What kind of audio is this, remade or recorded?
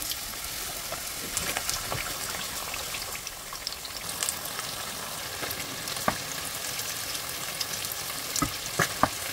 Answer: recorded